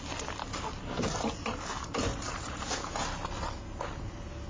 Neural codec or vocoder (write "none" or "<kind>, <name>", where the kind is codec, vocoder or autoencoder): none